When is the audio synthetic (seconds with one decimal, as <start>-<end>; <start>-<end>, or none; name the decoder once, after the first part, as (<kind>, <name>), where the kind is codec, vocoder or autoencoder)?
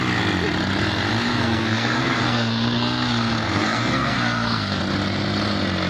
1.3-4.8 (codec, SNAC)